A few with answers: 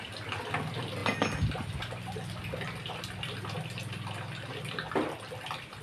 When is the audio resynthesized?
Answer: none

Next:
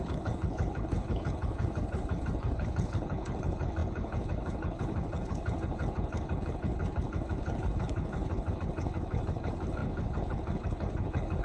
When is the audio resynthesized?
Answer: 0.0-11.4